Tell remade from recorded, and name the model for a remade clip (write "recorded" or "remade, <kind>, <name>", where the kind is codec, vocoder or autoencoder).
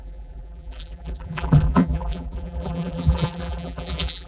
remade, vocoder, BigVGAN v2